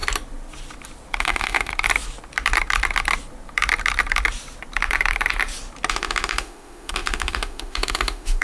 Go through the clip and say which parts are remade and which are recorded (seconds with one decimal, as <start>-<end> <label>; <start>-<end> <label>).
0.0-1.2 recorded; 1.2-1.7 remade; 1.7-5.9 recorded; 5.9-8.4 remade